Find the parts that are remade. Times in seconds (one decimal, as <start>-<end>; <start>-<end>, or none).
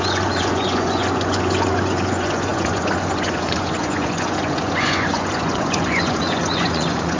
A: 0.0-7.2